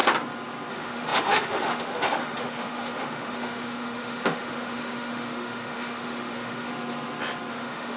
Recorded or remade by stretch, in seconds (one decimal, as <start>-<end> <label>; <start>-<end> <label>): 0.0-0.7 recorded; 0.7-6.7 remade; 6.7-7.5 recorded; 7.5-8.0 remade